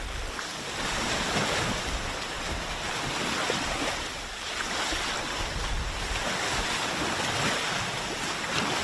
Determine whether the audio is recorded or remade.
recorded